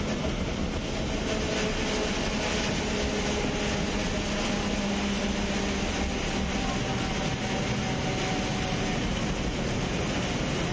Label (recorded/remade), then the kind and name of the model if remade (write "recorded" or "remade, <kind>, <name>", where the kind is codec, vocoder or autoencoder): recorded